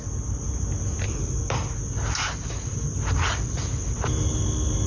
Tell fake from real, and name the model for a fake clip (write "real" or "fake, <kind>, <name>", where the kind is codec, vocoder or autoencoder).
real